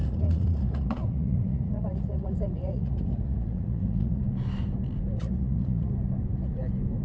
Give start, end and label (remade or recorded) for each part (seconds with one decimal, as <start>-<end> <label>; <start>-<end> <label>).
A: 0.0-4.2 remade; 4.2-5.2 recorded; 5.2-5.9 remade; 5.9-7.0 recorded